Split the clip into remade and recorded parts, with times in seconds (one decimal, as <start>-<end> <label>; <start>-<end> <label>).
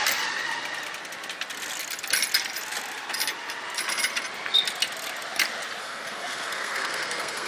0.0-5.8 recorded; 5.8-7.5 remade